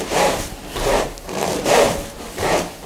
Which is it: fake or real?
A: fake